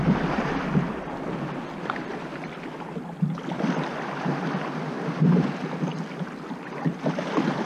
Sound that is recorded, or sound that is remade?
recorded